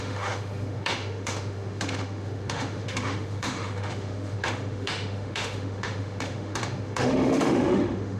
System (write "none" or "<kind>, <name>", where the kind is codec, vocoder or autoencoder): autoencoder, DAC-VAE